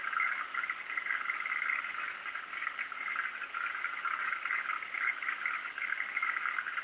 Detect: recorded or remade recorded